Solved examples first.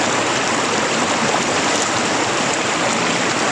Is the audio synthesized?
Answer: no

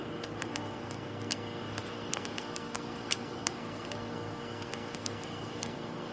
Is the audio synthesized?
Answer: yes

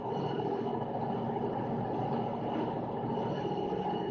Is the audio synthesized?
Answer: no